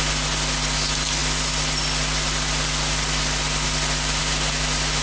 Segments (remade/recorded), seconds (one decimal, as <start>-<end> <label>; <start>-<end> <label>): 0.0-5.0 recorded